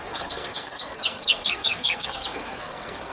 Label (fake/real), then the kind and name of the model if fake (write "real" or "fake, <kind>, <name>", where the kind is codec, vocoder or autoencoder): fake, codec, SNAC